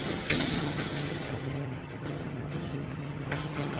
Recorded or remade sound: remade